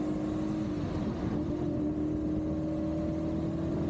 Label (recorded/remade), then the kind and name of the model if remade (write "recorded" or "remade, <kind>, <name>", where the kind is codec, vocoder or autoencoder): recorded